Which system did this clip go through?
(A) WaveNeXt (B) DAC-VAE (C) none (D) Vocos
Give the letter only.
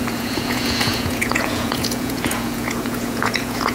D